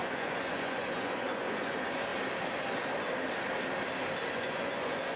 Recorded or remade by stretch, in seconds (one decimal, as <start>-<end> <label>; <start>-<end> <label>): 0.0-2.1 remade; 2.1-4.3 recorded; 4.3-5.2 remade

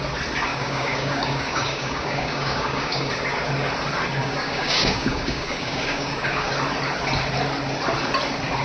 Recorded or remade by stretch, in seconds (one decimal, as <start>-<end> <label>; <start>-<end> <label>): 0.0-0.5 recorded; 0.5-3.1 remade; 3.1-4.2 recorded; 4.2-6.5 remade; 6.5-8.6 recorded

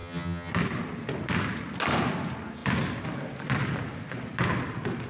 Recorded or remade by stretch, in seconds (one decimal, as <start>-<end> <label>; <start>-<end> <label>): 0.0-0.5 remade; 0.5-5.1 recorded

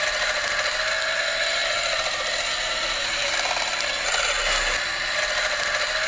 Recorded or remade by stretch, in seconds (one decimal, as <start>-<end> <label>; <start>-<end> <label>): 0.0-6.1 recorded

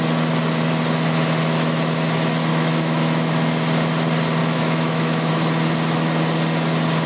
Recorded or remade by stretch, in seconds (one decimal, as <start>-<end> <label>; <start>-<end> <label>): 0.0-2.5 recorded; 2.5-3.3 remade; 3.3-4.4 recorded; 4.4-5.3 remade; 5.3-7.1 recorded